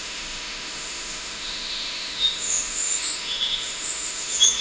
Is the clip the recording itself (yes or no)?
no